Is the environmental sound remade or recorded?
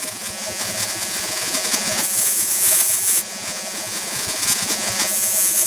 remade